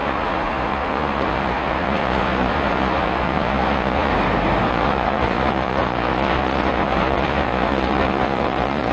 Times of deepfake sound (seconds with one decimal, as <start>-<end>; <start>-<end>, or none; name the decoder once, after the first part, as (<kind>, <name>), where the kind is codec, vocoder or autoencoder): 0.0-4.1 (vocoder, Vocos); 4.7-8.9